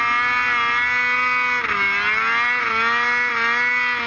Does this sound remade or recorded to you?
recorded